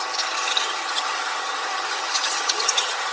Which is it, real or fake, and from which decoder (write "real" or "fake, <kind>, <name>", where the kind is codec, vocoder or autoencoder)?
fake, vocoder, HiFi-GAN